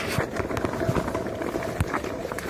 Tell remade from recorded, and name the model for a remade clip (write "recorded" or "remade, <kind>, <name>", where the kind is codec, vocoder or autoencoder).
recorded